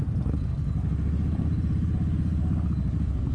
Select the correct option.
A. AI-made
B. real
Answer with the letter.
B